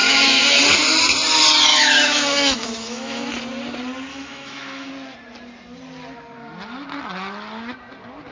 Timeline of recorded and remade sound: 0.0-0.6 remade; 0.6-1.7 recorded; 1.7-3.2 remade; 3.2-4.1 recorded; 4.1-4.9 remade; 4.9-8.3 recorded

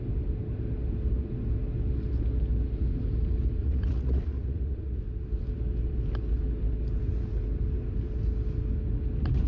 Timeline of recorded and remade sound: 0.0-3.6 recorded; 3.6-5.0 remade; 5.0-9.5 recorded

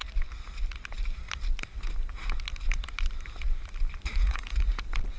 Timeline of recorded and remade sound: 0.0-4.2 recorded; 4.2-4.8 remade; 4.8-5.2 recorded

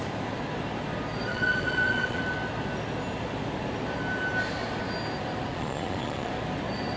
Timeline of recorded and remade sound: 0.0-1.3 recorded; 1.3-2.2 remade; 2.2-5.5 recorded; 5.5-6.3 remade; 6.3-7.0 recorded

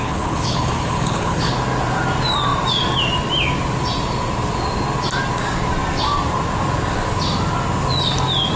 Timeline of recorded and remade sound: 0.0-1.5 remade; 1.5-8.6 recorded

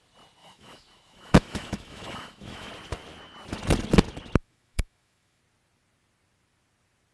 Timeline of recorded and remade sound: 0.0-0.4 recorded; 0.4-2.7 remade; 2.7-4.4 recorded; 4.4-5.4 remade; 5.4-7.1 recorded

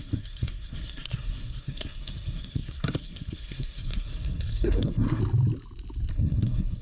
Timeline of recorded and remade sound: 0.0-5.2 remade; 5.2-6.1 recorded; 6.1-6.8 remade